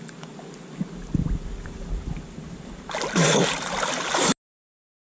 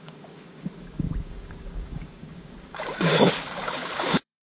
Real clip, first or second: first